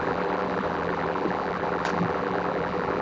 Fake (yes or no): yes